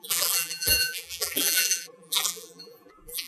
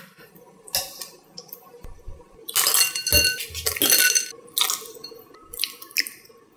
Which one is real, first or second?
second